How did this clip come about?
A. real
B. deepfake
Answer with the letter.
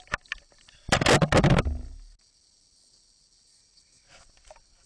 A